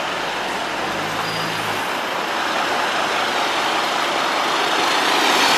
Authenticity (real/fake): real